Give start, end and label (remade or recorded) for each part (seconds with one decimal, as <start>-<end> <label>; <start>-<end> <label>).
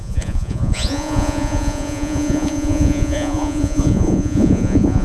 0.0-5.0 remade